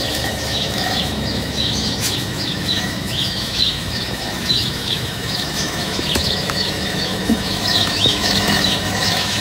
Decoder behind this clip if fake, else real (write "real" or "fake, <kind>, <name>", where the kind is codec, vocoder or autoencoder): fake, autoencoder, DAC-VAE